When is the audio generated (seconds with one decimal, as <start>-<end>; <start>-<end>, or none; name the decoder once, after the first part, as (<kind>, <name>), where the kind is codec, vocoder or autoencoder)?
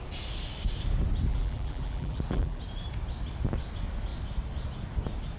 1.3-2.6 (vocoder, BigVGAN v2)